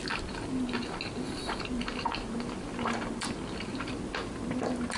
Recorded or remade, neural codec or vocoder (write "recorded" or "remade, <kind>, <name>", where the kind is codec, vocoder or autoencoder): recorded